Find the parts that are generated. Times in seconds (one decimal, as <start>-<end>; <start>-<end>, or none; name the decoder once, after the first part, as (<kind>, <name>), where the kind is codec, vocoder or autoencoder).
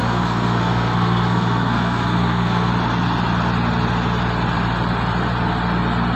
0.0-2.7 (codec, SNAC)